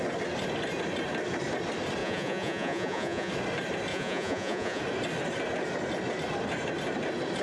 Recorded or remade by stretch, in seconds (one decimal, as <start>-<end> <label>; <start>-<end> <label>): 0.0-2.0 recorded; 2.0-3.3 remade; 3.3-3.9 recorded; 3.9-4.8 remade; 4.8-7.4 recorded